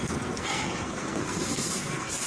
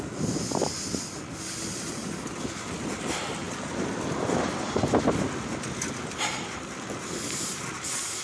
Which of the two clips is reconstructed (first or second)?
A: first